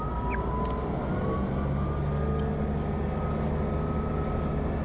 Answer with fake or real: real